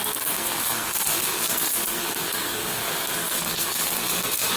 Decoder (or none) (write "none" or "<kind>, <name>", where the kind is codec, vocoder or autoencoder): codec, SNAC